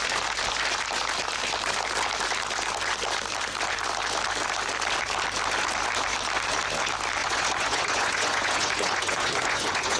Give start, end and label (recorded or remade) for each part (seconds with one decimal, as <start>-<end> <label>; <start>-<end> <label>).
0.0-7.2 recorded; 7.2-10.0 remade